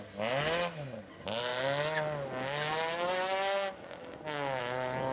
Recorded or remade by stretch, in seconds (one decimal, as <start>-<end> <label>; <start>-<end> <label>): 0.0-5.1 recorded